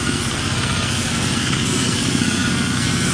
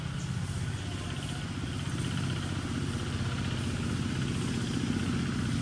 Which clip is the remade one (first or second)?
first